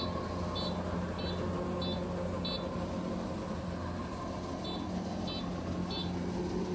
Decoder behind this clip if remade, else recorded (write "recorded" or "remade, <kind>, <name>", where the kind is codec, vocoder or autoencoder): recorded